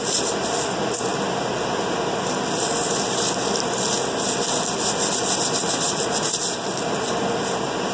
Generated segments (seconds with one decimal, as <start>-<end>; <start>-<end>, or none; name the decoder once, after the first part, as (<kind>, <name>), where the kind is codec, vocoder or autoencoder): none